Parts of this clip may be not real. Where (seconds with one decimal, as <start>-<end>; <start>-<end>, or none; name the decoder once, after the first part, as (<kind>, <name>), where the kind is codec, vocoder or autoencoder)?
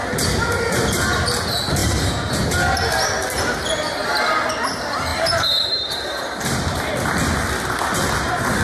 1.8-2.4 (vocoder, BigVGAN v2); 5.1-6.9